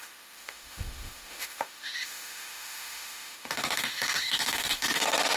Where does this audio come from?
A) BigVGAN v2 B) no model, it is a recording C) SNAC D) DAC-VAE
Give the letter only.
D